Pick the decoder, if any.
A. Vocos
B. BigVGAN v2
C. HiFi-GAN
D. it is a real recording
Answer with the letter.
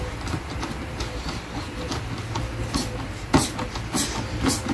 D